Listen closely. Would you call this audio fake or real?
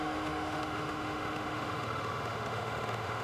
fake